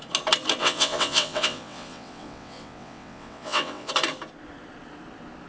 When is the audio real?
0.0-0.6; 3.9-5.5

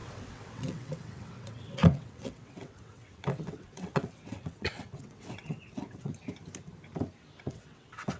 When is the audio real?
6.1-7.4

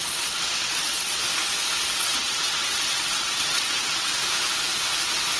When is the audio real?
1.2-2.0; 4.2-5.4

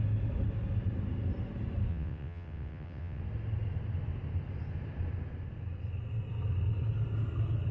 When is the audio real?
0.0-1.9; 3.2-7.7